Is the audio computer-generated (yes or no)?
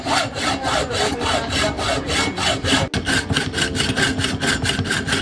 no